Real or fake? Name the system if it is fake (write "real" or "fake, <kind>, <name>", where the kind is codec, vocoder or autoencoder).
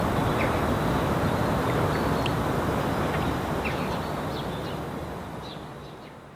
real